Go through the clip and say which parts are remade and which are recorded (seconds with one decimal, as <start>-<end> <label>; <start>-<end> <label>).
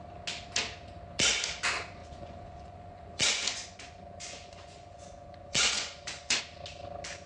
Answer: 0.0-2.0 recorded; 2.0-6.4 remade; 6.4-7.3 recorded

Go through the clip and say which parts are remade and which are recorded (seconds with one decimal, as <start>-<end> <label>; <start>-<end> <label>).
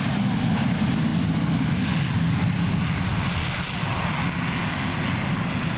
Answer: 0.0-5.8 recorded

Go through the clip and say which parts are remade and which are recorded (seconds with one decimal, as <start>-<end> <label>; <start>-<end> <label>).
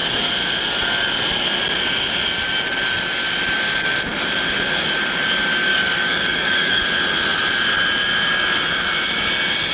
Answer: 0.0-5.7 recorded; 5.7-6.8 remade; 6.8-9.7 recorded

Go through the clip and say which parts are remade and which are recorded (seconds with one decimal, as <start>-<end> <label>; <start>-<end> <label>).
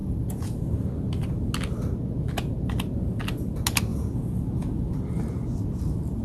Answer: 0.0-0.6 remade; 0.6-3.9 recorded; 3.9-5.0 remade; 5.0-6.2 recorded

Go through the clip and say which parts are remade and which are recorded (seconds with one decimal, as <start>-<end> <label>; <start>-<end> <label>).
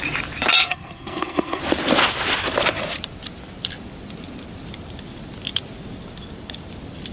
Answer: 0.0-0.6 recorded; 0.6-1.6 remade; 1.6-7.1 recorded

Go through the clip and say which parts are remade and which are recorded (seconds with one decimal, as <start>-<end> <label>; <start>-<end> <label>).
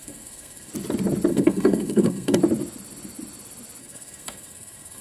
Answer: 0.0-0.7 remade; 0.7-1.3 recorded; 1.3-2.4 remade; 2.4-3.8 recorded; 3.8-5.0 remade